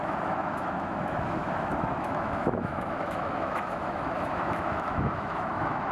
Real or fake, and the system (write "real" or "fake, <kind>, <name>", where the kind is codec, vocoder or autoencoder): fake, autoencoder, DAC-VAE